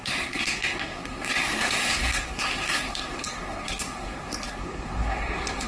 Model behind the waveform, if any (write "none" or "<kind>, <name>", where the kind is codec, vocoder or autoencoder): codec, SNAC